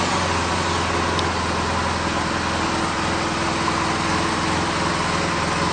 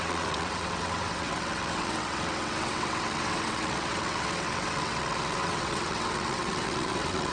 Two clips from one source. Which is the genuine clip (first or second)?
first